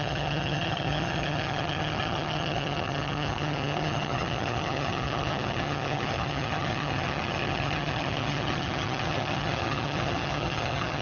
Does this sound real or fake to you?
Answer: fake